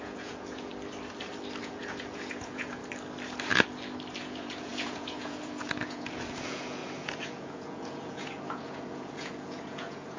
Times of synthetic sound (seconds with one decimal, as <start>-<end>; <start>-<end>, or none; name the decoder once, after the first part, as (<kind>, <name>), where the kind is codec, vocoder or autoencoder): 0.0-0.7 (vocoder, Vocos); 1.6-2.8; 4.2-10.2